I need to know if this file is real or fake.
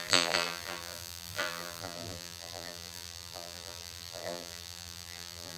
fake